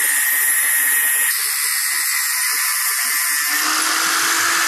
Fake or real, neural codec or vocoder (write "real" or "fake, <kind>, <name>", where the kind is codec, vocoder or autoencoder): real